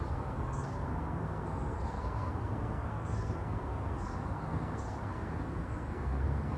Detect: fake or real fake